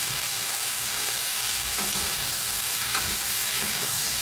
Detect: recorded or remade remade